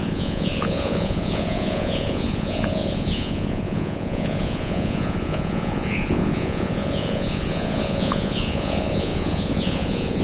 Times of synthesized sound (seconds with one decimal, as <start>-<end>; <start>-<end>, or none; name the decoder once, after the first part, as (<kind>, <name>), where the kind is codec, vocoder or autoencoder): 0.0-10.2 (vocoder, Vocos)